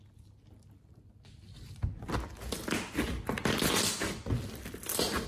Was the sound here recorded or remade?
recorded